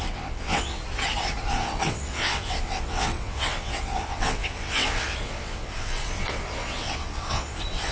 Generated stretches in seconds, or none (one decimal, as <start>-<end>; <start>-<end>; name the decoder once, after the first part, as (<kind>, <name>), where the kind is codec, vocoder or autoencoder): 0.0-0.8 (vocoder, WaveNeXt); 1.5-7.9